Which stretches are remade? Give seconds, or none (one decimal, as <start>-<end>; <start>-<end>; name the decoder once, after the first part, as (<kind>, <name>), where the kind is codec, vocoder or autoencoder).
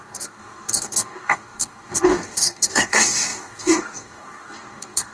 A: 0.0-5.1 (codec, DAC)